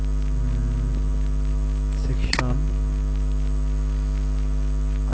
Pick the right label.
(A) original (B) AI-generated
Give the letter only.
A